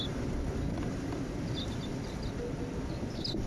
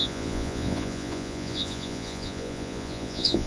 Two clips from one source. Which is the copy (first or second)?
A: second